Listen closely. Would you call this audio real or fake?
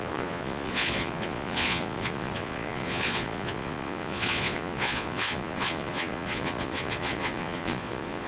fake